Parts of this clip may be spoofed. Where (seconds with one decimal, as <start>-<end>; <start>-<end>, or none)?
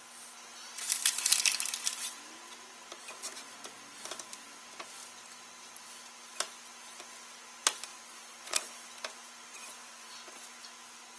7.9-8.6; 9.5-10.1